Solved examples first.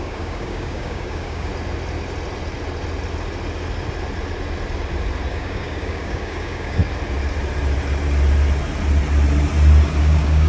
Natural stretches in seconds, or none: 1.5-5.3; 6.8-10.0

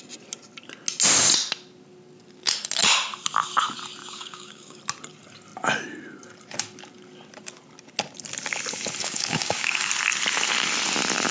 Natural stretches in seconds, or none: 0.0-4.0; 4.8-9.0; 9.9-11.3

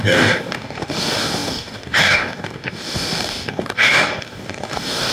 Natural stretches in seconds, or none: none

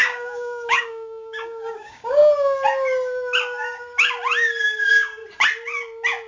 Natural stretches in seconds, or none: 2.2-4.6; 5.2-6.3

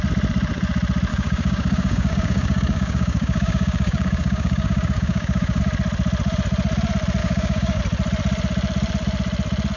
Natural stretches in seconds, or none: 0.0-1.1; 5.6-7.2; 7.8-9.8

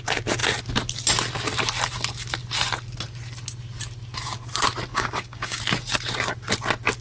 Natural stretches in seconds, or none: 0.0-4.9; 5.6-7.0

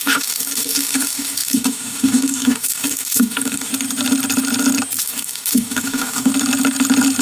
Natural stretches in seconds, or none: 3.7-5.0; 6.3-7.2

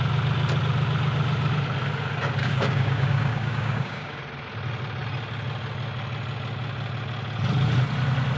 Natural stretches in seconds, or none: 0.0-2.4; 4.2-8.4